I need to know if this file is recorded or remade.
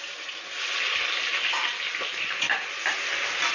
recorded